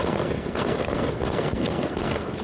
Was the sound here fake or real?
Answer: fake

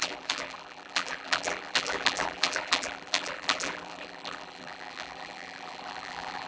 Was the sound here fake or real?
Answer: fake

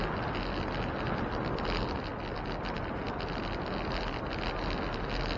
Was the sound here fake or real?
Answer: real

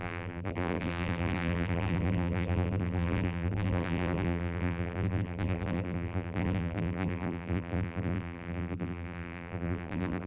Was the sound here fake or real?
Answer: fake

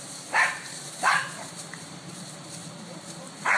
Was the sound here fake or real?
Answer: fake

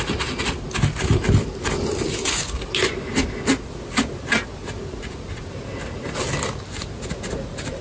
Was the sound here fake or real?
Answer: real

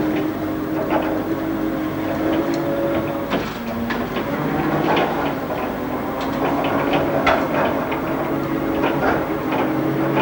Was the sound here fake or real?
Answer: real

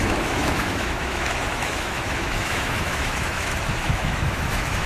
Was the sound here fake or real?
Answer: fake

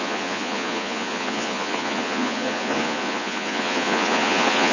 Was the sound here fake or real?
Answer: fake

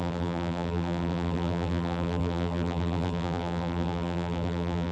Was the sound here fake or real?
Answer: fake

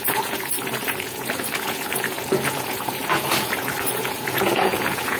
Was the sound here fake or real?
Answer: fake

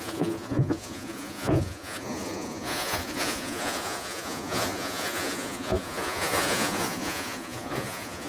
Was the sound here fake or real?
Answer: fake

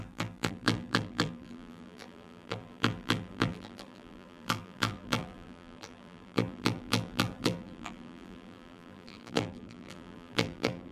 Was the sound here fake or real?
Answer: fake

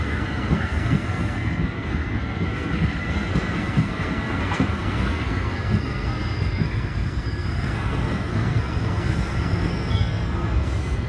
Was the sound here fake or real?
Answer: fake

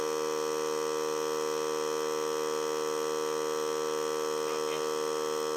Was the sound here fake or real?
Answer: real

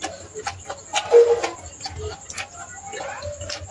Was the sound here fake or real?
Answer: real